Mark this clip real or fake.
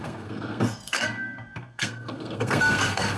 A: fake